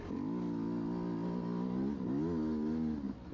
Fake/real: real